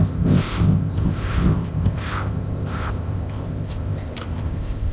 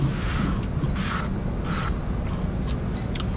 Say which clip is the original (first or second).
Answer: second